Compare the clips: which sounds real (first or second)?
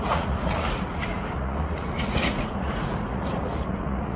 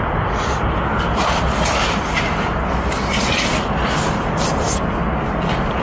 second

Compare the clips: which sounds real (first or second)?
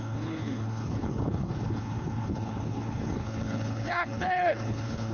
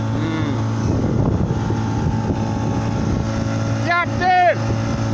second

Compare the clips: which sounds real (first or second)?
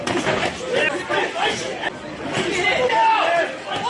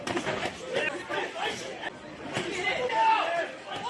first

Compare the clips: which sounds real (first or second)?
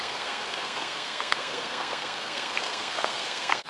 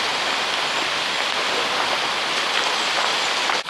second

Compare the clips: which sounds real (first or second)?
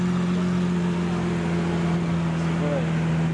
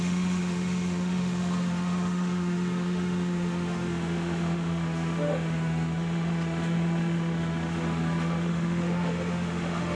first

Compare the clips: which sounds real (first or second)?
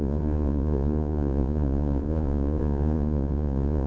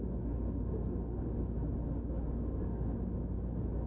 second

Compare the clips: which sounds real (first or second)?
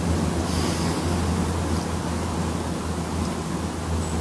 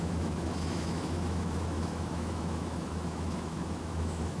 first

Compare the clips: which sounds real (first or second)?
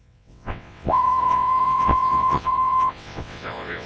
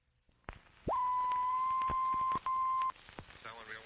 second